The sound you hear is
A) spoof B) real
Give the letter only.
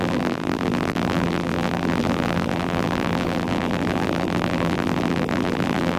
A